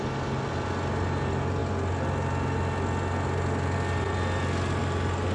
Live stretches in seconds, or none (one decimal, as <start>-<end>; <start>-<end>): 0.0-5.3